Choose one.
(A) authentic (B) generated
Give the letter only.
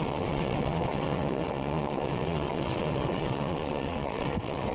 B